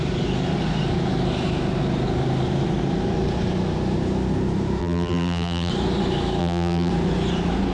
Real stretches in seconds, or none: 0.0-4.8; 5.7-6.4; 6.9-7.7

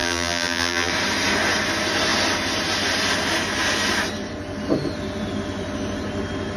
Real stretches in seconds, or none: 0.9-6.6

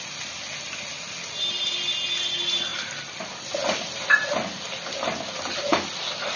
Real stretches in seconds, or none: 0.0-2.7; 3.4-6.4